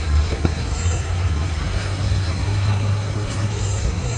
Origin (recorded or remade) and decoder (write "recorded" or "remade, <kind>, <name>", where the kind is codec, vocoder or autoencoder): remade, codec, SNAC